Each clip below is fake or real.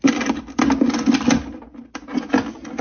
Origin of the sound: real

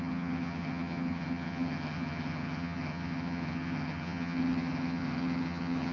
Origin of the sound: fake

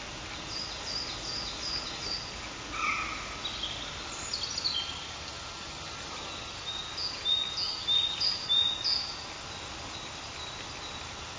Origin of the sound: real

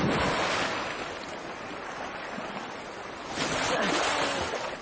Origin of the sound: real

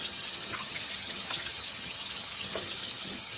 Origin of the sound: fake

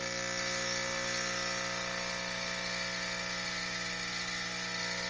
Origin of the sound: real